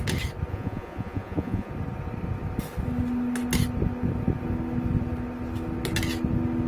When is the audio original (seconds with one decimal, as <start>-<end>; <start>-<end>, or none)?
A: 0.0-0.5; 1.7-6.7